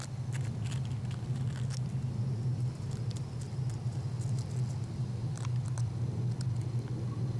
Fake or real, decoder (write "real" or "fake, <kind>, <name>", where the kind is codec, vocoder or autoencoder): real